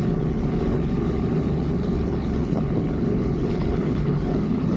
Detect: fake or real fake